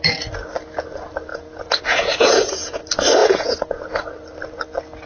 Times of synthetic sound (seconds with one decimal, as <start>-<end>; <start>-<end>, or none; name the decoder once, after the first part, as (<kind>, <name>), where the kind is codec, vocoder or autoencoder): 1.3-2.8 (vocoder, Vocos); 3.2-3.8